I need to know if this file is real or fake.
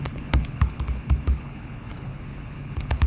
fake